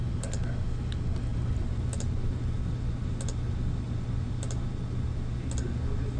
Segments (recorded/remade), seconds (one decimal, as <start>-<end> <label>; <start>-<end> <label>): 0.0-6.2 recorded